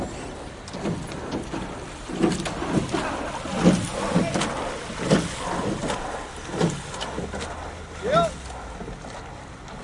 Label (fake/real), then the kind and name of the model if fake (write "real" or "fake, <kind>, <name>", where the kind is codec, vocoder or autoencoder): real